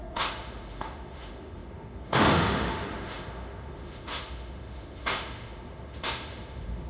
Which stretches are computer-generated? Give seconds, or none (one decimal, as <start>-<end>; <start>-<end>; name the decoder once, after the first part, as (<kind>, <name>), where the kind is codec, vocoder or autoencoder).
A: 0.0-6.9 (autoencoder, DAC-VAE)